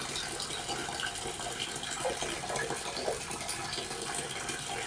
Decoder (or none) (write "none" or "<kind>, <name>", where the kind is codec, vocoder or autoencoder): none